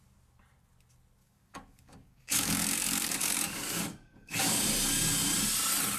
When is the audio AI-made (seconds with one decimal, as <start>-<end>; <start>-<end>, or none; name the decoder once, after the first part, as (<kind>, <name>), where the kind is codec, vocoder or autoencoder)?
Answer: 1.2-4.5 (codec, DAC)